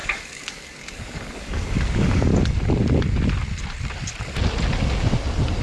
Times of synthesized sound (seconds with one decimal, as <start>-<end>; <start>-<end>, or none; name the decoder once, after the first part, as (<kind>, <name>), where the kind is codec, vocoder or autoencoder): 0.0-2.3 (codec, DAC)